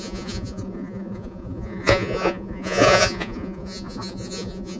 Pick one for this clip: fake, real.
fake